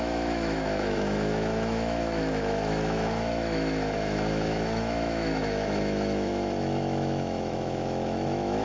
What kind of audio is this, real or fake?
fake